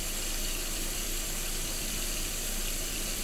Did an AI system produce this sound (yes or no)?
yes